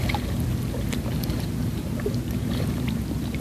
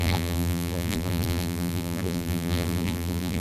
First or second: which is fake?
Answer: second